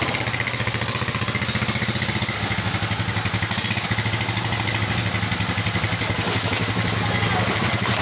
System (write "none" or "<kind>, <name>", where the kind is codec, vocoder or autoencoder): none